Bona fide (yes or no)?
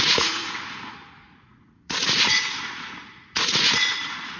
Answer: no